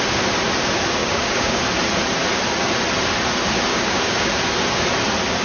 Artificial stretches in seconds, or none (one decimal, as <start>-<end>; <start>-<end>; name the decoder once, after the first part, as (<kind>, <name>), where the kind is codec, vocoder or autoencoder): 1.0-1.6 (codec, DAC); 3.7-4.3